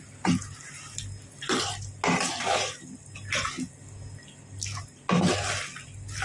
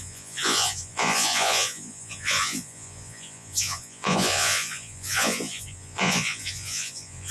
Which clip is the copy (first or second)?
second